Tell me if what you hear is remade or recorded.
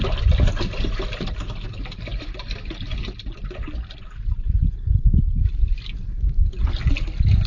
recorded